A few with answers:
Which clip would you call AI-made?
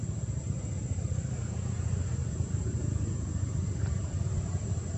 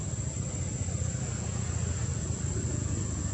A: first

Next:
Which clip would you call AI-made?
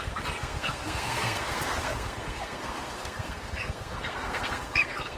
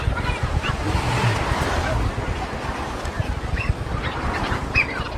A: first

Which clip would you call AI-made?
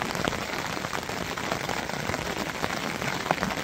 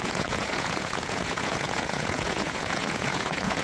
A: second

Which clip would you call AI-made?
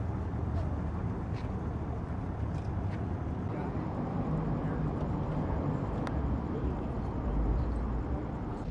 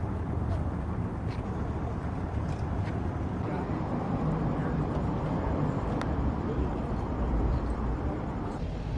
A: second